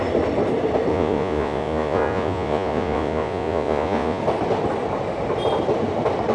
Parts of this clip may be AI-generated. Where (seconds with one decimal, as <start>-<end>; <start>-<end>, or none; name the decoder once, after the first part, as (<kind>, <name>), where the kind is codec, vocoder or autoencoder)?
0.9-4.2 (vocoder, Vocos)